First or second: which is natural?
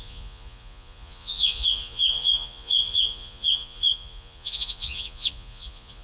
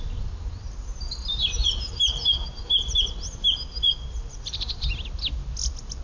second